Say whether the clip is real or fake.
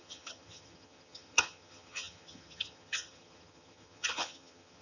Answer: fake